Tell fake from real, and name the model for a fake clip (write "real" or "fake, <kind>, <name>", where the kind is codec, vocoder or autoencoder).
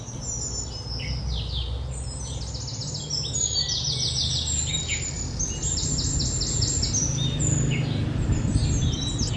real